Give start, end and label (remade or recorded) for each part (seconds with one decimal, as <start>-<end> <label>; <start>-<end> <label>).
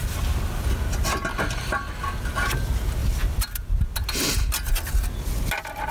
0.0-3.0 recorded; 3.0-3.7 remade; 3.7-5.9 recorded